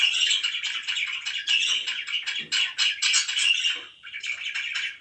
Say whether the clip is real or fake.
real